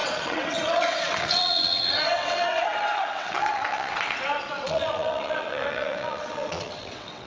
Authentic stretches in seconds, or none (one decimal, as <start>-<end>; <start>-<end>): none